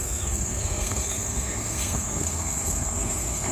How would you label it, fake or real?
fake